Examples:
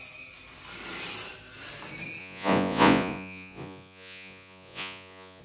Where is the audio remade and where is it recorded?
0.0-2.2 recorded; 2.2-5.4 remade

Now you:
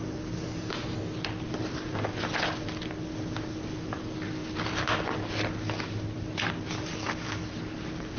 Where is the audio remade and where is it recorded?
0.0-0.7 remade; 0.7-6.9 recorded; 6.9-7.5 remade; 7.5-8.2 recorded

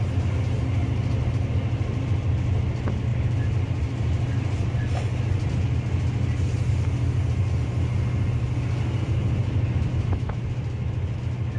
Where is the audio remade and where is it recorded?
0.0-9.9 recorded; 9.9-10.4 remade; 10.4-11.6 recorded